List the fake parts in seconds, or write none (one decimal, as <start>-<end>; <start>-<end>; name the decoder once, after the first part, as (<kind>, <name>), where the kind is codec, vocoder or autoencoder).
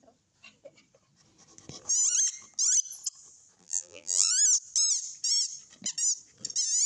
3.6-4.3 (vocoder, BigVGAN v2)